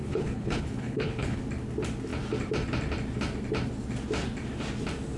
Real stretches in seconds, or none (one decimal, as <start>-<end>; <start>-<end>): 1.4-5.2